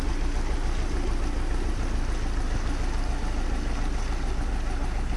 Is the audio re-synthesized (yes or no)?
no